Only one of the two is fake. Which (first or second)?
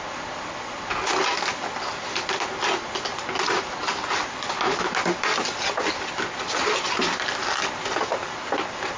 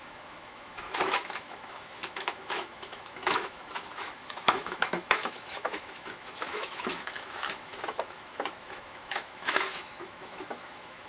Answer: second